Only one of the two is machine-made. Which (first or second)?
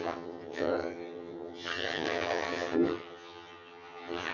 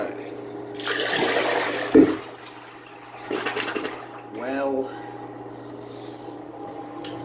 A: first